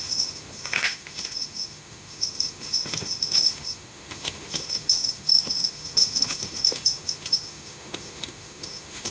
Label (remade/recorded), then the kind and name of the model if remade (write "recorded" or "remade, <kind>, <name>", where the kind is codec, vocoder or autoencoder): remade, autoencoder, DAC-VAE